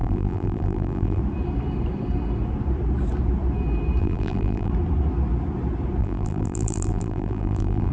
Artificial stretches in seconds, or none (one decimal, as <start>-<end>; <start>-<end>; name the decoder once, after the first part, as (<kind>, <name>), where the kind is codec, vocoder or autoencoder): 0.0-1.2 (vocoder, BigVGAN v2); 4.0-4.7; 6.0-7.9